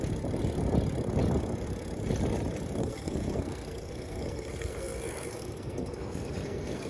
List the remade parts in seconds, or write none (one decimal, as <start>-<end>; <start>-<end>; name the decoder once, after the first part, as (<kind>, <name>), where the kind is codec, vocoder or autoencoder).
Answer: 2.8-6.9 (codec, SNAC)